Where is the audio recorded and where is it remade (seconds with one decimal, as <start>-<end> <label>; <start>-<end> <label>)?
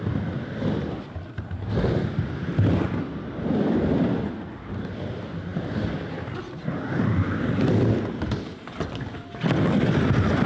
0.0-10.5 recorded